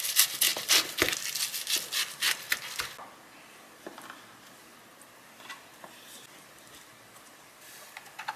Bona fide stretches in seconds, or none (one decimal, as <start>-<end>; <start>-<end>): 0.0-8.4